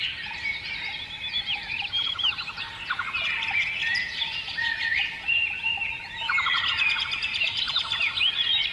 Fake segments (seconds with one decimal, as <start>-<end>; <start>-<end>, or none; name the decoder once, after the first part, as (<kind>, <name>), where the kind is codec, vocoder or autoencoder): 0.0-8.7 (vocoder, BigVGAN v2)